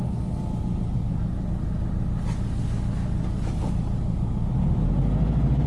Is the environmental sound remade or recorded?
recorded